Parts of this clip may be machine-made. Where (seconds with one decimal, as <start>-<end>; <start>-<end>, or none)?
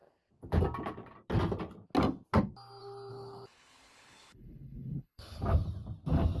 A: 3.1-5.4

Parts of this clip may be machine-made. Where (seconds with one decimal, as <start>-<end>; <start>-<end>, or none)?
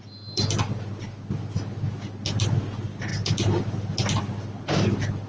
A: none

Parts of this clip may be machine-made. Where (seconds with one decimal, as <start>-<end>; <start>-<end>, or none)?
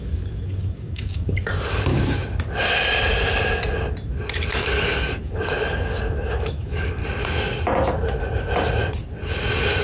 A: 0.0-1.9; 4.5-7.0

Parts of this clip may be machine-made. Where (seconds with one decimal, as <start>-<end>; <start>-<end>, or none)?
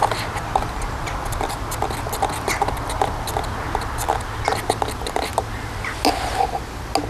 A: none